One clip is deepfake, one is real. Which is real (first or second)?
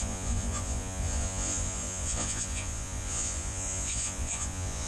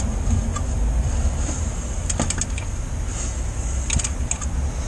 second